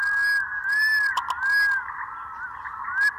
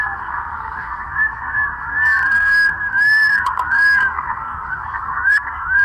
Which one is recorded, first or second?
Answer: first